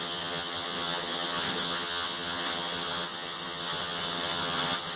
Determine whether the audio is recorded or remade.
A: remade